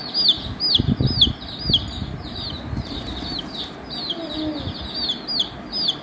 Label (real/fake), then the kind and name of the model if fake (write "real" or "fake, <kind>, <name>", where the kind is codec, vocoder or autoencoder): real